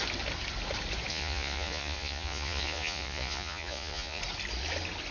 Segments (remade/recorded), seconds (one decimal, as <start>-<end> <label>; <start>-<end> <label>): 0.0-1.1 recorded; 1.1-4.2 remade; 4.2-5.1 recorded